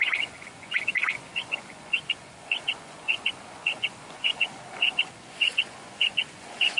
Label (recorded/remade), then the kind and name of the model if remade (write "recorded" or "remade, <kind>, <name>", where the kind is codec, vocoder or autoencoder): remade, vocoder, Vocos